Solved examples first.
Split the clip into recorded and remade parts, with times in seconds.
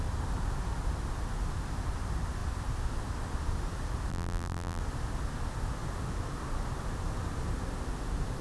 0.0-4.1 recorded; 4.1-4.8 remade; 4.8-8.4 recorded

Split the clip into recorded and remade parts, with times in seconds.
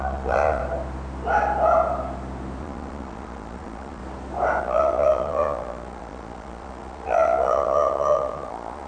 0.0-0.6 remade; 0.6-2.6 recorded; 2.6-4.0 remade; 4.0-4.6 recorded; 4.6-8.9 remade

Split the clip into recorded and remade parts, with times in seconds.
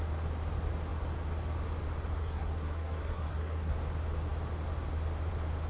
0.0-2.2 recorded; 2.2-3.7 remade; 3.7-5.7 recorded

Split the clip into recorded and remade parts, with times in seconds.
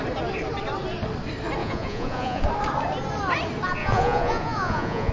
0.0-1.6 recorded; 1.6-2.4 remade; 2.4-3.8 recorded; 3.8-5.1 remade